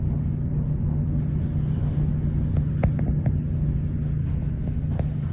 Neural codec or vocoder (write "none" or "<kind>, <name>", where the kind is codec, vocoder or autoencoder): none